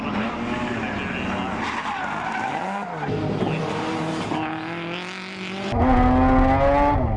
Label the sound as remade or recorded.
recorded